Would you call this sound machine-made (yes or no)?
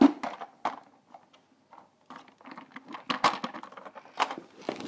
no